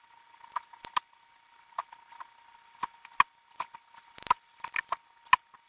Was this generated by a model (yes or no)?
no